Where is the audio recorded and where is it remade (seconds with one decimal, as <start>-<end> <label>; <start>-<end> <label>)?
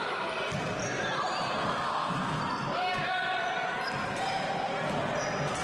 0.0-1.6 recorded; 1.6-2.4 remade; 2.4-5.6 recorded